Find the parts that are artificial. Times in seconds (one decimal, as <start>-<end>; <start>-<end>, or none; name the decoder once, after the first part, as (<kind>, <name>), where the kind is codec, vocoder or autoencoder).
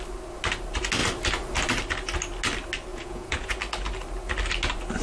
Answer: 2.9-3.6 (vocoder, Vocos)